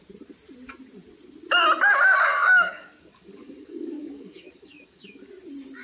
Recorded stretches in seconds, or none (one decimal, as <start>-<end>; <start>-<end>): 0.0-2.3; 5.3-5.8